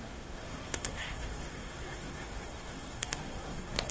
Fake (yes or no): yes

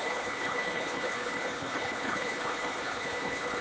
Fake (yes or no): yes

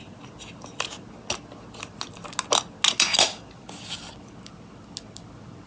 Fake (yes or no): no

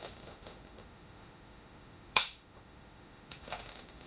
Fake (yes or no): yes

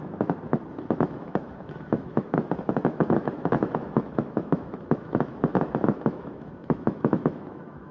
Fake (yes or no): yes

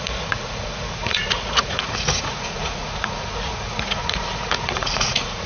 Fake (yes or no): yes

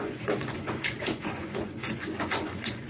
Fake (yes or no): yes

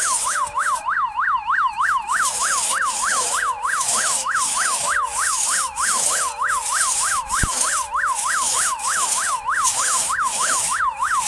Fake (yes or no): yes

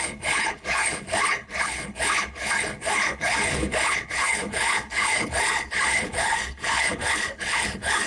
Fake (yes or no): yes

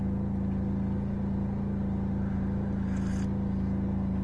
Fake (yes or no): no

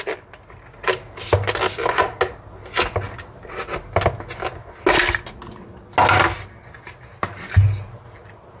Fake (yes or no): no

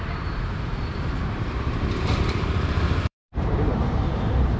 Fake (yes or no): yes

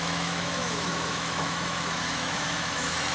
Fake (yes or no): yes